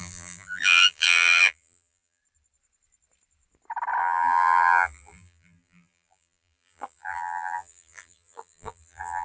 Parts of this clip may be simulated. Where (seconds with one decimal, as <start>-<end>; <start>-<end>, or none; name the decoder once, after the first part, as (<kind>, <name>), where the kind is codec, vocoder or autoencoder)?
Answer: 0.0-2.2 (vocoder, BigVGAN v2); 4.0-9.2

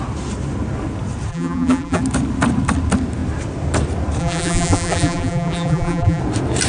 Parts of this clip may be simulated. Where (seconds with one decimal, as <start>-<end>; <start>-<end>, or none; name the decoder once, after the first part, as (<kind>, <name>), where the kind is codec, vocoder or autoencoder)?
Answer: 1.3-2.0 (vocoder, BigVGAN v2); 4.2-6.2

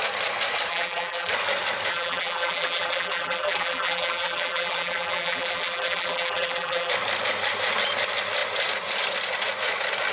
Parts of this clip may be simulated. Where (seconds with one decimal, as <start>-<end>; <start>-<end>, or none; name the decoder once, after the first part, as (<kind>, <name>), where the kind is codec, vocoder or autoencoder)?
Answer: 0.7-1.3 (vocoder, BigVGAN v2); 1.9-6.9

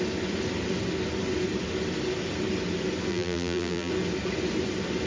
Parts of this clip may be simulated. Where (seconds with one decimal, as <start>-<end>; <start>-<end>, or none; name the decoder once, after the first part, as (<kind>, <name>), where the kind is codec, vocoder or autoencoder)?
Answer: 3.1-3.9 (vocoder, BigVGAN v2)